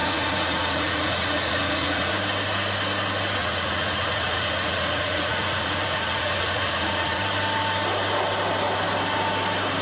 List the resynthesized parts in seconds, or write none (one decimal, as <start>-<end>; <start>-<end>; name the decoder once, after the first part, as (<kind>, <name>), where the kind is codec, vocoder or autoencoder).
0.0-2.1 (vocoder, Vocos); 3.4-7.2